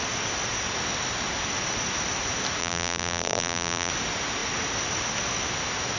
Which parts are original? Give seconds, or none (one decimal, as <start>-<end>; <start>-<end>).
0.0-2.6; 3.9-6.0